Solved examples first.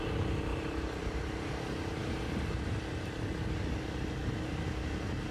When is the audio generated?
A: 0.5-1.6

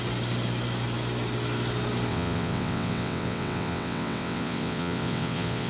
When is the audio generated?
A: 2.1-5.7

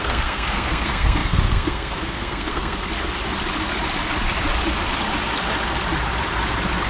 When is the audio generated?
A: 0.0-2.9

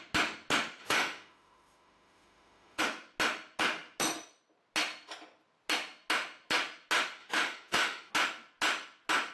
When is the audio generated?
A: 0.8-2.8; 7.2-8.1